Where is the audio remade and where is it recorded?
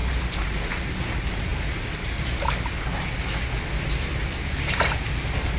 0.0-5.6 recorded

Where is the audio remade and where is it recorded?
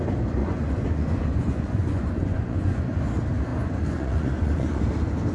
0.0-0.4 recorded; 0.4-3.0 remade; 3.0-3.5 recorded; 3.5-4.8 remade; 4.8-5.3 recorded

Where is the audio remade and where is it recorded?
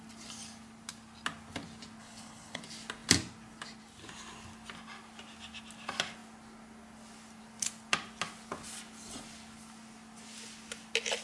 0.0-2.0 recorded; 2.0-2.6 remade; 2.6-11.2 recorded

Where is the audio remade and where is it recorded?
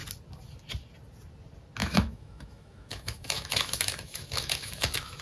0.0-1.8 recorded; 1.8-5.2 remade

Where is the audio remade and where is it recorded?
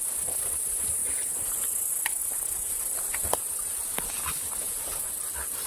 0.0-5.7 recorded